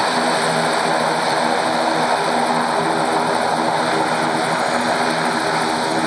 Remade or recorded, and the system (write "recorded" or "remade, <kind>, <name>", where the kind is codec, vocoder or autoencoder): recorded